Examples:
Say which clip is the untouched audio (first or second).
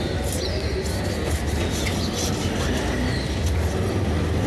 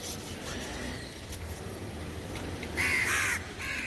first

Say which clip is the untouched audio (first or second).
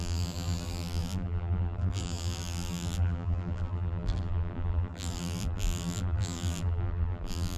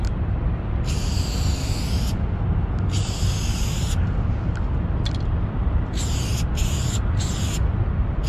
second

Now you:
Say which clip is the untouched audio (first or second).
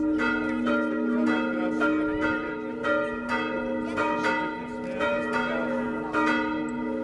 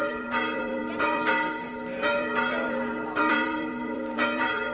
first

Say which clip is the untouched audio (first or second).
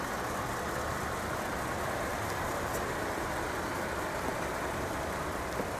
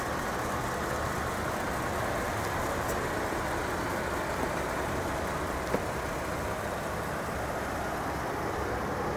second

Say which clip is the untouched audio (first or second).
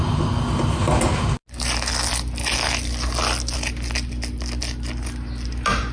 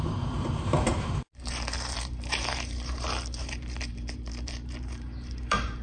first